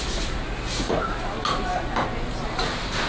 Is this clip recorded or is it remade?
recorded